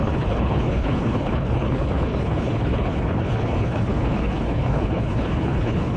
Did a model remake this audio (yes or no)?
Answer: yes